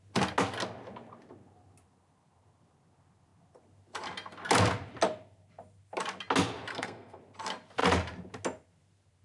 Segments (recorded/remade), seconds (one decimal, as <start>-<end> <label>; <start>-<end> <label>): 0.0-6.7 recorded; 6.7-7.2 remade; 7.2-9.2 recorded